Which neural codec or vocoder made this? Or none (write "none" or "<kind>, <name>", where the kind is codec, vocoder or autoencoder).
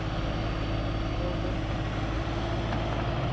none